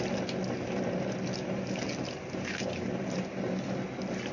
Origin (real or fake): real